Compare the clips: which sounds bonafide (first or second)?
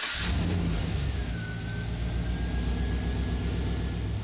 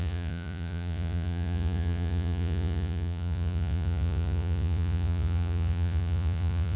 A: first